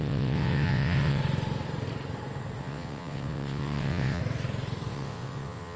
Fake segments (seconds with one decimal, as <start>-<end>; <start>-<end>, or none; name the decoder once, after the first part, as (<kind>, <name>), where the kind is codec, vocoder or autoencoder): 0.0-1.2 (vocoder, WaveNeXt); 2.6-4.2; 4.9-5.8